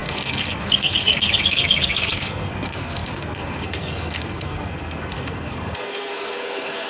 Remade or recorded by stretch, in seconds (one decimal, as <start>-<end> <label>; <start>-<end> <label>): 0.0-6.9 remade